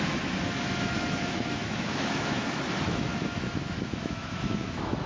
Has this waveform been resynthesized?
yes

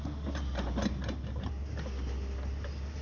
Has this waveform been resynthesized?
no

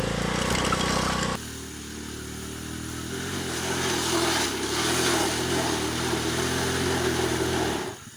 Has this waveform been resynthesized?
no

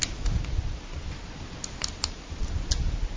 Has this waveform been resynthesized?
no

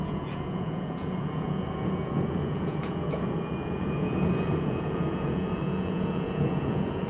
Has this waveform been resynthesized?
yes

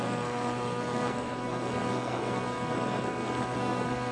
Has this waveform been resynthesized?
yes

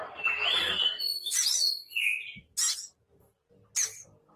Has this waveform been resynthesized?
no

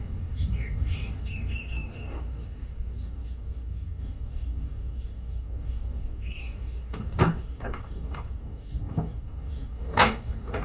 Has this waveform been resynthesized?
yes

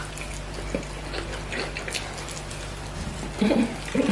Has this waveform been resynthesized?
no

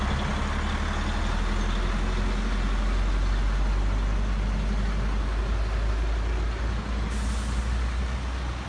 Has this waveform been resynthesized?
no